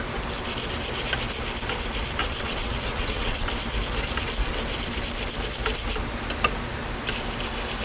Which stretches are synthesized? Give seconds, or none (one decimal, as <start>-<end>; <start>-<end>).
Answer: 2.2-3.5